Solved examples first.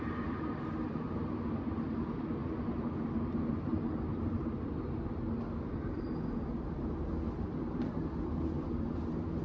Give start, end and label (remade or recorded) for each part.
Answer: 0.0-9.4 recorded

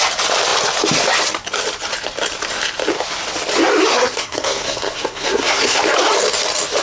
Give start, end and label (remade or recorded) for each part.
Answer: 0.0-3.9 recorded; 3.9-5.8 remade; 5.8-6.8 recorded

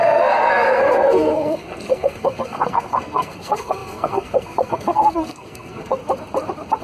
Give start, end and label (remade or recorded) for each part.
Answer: 0.0-6.0 remade; 6.0-6.8 recorded

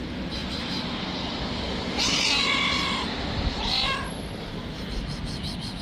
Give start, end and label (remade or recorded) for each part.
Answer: 0.0-5.8 recorded